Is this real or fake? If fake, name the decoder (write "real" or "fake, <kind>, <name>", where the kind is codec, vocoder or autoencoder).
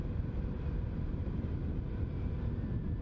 real